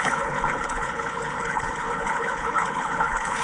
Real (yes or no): no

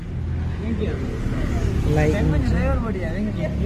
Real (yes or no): yes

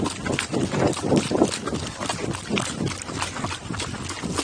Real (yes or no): yes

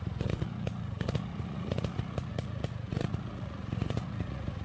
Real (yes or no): no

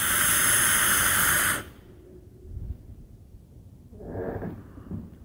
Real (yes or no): no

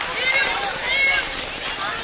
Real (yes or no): yes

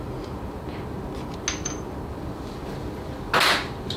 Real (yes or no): yes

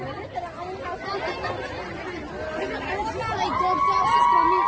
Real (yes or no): yes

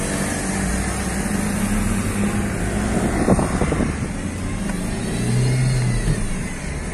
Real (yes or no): yes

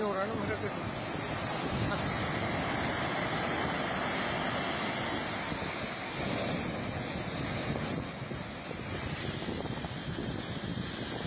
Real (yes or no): yes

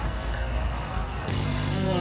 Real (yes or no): no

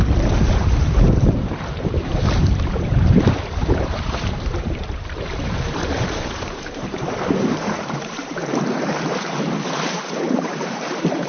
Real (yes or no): no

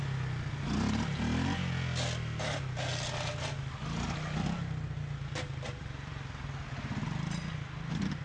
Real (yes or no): yes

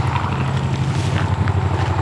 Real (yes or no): yes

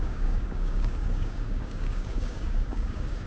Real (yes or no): no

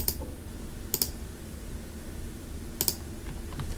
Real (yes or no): yes